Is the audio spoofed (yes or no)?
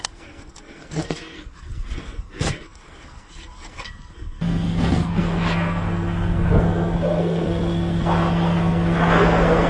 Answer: yes